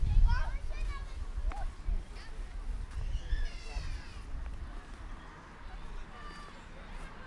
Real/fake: real